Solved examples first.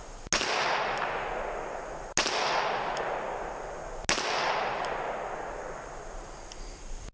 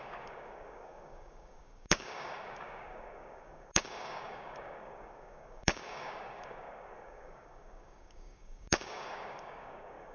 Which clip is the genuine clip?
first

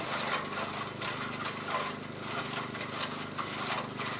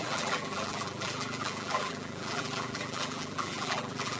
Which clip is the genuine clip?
first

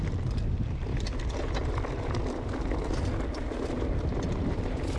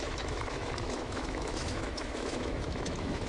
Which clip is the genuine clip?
first